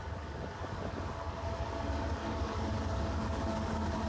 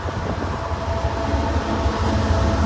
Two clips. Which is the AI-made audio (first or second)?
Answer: first